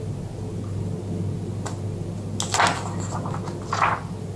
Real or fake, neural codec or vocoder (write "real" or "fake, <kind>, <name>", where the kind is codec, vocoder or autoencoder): real